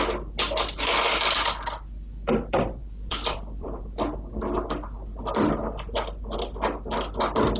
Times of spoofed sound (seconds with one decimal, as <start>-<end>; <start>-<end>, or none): 2.8-3.8